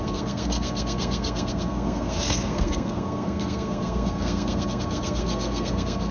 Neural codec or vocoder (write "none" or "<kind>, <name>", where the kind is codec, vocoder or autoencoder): codec, SNAC